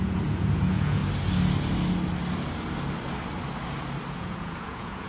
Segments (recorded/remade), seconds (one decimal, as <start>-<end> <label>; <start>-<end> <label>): 0.0-1.0 remade; 1.0-4.1 recorded; 4.1-5.1 remade